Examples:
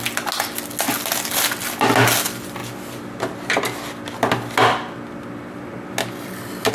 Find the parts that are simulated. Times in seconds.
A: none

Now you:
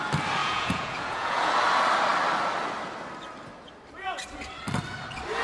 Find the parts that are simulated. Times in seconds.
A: 0.4-1.5

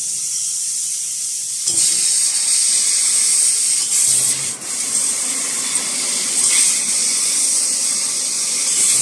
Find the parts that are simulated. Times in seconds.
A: 1.2-2.6; 6.9-9.0

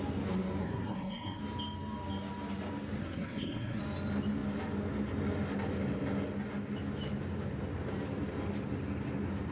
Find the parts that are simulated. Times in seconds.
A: 0.6-1.4; 3.0-3.8

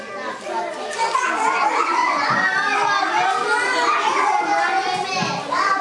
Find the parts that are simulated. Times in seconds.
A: none

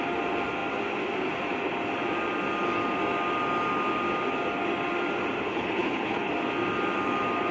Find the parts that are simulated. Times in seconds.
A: 5.5-6.3

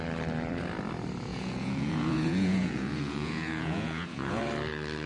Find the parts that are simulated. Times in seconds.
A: 1.3-4.4

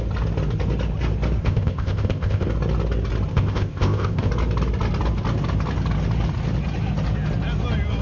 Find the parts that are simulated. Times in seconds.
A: 1.4-2.5; 3.3-4.3